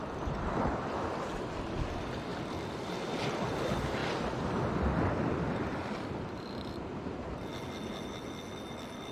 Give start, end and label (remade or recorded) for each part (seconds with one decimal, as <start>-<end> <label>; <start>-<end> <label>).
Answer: 0.0-2.3 recorded; 2.3-2.9 remade; 2.9-9.1 recorded